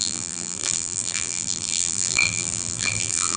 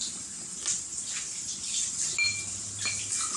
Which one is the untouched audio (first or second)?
second